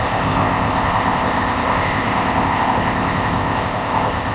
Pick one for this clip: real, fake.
fake